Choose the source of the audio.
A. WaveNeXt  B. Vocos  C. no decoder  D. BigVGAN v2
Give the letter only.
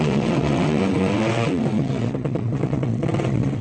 A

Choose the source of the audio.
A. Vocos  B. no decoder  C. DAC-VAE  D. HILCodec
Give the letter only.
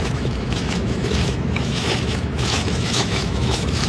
C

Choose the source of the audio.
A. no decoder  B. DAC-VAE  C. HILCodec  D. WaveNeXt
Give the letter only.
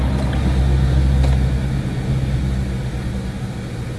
A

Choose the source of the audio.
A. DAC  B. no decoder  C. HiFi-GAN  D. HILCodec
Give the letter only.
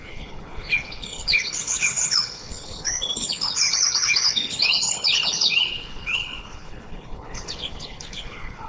D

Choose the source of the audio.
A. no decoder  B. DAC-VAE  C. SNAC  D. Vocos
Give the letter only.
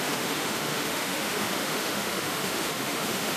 B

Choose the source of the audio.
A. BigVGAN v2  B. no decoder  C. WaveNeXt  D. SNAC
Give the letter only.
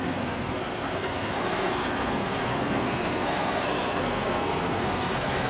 D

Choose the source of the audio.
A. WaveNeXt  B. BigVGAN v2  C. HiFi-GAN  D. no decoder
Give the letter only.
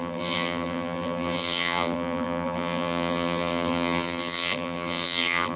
B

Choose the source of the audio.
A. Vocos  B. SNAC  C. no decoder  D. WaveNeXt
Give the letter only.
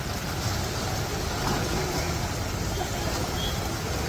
C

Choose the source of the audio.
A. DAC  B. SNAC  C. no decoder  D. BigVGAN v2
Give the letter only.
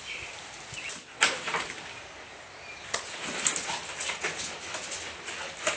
C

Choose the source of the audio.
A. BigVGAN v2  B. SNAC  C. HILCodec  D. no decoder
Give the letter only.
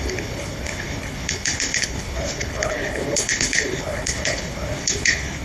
C